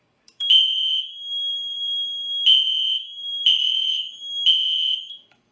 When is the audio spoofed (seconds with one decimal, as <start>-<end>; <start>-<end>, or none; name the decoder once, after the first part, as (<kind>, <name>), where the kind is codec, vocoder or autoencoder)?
0.0-5.5 (vocoder, BigVGAN v2)